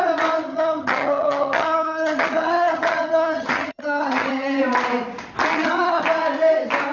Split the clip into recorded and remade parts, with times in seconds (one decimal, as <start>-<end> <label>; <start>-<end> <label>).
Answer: 0.0-0.5 recorded; 0.5-4.6 remade; 4.6-5.5 recorded; 5.5-6.0 remade; 6.0-6.9 recorded